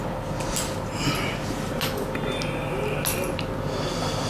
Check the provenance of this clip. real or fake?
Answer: real